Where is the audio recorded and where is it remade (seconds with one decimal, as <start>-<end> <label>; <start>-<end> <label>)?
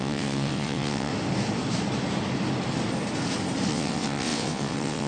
0.0-1.1 remade; 1.1-3.7 recorded; 3.7-5.1 remade